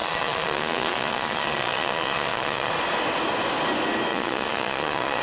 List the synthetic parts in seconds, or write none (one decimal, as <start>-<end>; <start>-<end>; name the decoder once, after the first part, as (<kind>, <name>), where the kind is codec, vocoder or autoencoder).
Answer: 0.0-2.7 (vocoder, Vocos); 4.1-5.2